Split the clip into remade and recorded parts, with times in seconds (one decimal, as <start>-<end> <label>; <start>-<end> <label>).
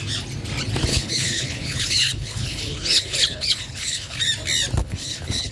0.0-0.9 recorded; 0.9-4.2 remade; 4.2-4.8 recorded; 4.8-5.5 remade